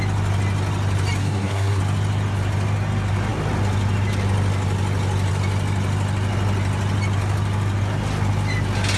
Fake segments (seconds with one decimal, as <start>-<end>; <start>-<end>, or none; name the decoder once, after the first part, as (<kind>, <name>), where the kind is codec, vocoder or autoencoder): 1.2-1.8 (codec, SNAC)